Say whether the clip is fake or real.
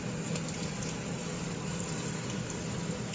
real